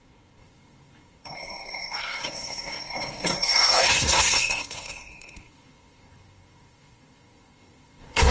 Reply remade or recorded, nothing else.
remade